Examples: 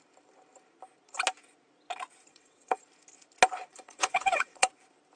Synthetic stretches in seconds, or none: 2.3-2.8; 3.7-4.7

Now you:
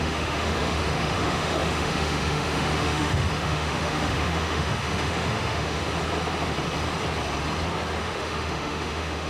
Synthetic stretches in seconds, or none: 0.0-5.8; 8.0-9.3

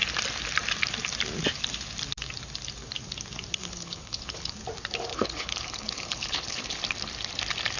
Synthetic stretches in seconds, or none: 3.6-4.5; 5.1-6.8

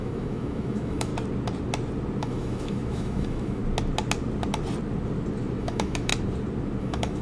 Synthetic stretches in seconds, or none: 0.0-1.1; 2.2-3.6; 5.6-6.1; 6.8-7.2

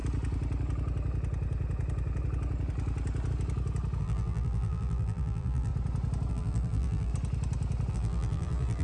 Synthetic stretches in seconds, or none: 4.0-5.7; 6.3-7.1; 7.9-8.8